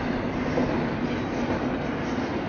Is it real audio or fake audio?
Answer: real